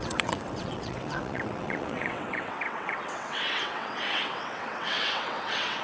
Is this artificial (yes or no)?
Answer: yes